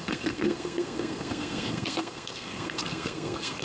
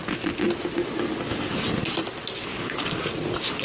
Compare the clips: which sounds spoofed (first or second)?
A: first